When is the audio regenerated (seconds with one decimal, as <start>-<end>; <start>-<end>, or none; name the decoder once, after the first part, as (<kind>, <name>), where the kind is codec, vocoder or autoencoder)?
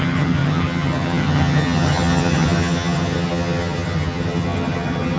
0.0-5.2 (vocoder, HiFi-GAN)